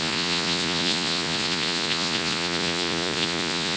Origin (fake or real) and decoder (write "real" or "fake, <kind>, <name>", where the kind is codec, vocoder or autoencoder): fake, vocoder, Vocos